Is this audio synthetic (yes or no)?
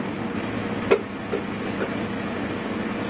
no